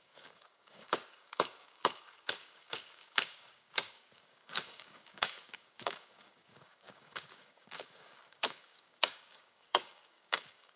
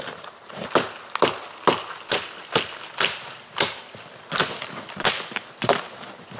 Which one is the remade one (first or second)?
first